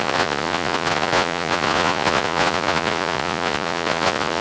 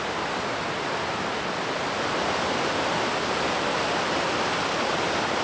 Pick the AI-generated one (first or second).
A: first